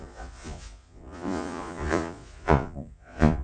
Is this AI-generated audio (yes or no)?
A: yes